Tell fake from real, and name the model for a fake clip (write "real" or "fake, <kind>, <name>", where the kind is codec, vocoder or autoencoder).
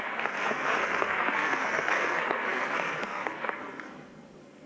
fake, codec, SNAC